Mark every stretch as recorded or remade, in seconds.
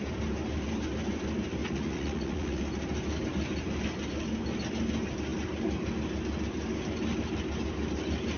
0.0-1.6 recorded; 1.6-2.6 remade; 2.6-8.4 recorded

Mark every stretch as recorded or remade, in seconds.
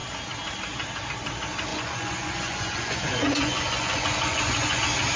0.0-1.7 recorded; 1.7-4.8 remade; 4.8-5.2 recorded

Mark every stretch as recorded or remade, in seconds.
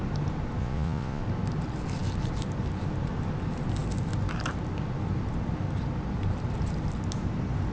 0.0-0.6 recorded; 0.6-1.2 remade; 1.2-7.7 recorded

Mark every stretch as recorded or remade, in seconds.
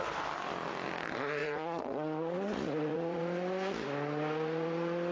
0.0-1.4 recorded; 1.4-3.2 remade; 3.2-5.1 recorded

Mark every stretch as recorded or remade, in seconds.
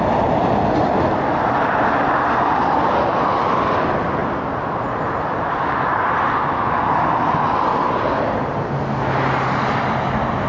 0.0-10.5 recorded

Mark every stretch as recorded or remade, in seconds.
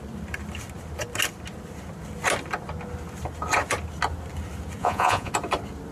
0.0-4.8 recorded; 4.8-5.3 remade; 5.3-5.9 recorded